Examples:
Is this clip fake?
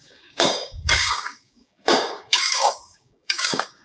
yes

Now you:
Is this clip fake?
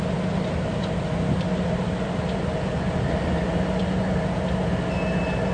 no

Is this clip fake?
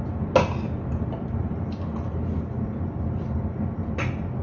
no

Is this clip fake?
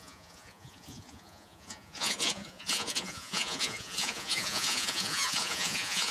yes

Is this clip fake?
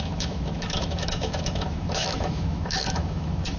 yes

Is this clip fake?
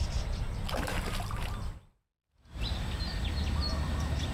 no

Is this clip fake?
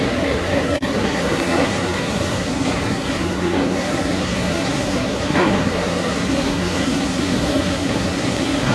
yes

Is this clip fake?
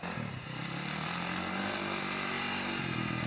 no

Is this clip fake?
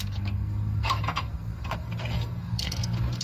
yes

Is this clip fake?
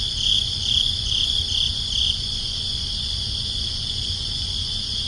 yes